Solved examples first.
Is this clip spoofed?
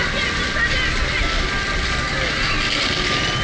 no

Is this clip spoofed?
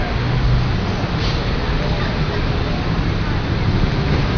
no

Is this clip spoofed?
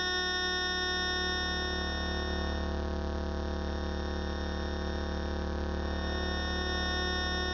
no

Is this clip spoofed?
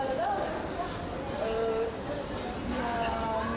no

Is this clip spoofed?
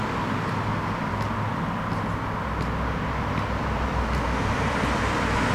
no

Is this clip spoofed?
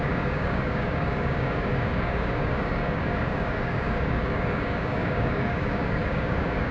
yes